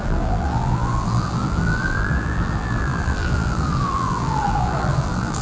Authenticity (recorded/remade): remade